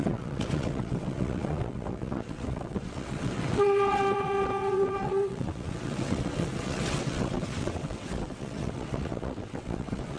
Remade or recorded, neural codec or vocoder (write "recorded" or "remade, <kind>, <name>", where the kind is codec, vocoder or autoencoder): remade, vocoder, WaveNeXt